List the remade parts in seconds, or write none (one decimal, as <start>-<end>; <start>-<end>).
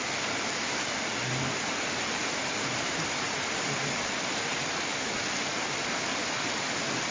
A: none